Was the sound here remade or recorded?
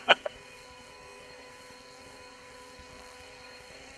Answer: remade